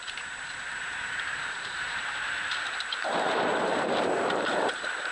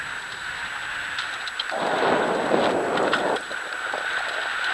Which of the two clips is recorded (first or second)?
second